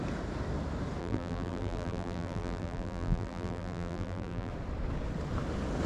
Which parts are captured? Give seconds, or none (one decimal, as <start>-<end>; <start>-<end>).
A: 0.0-1.0; 4.5-5.9